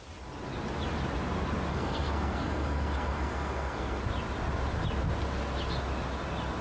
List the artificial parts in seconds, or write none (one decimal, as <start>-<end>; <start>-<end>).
1.7-4.0